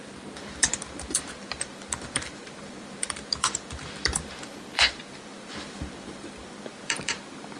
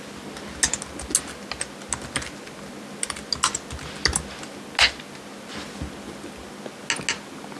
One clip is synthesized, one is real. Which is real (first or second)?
second